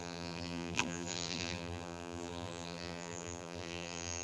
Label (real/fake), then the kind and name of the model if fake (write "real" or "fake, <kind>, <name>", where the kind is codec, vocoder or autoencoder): fake, vocoder, BigVGAN v2